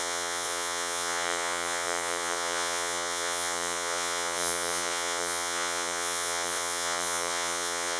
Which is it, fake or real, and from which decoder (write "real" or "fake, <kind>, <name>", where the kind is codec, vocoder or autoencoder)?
fake, vocoder, Vocos